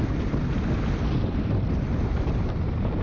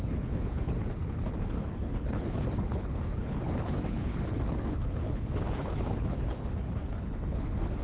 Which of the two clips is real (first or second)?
first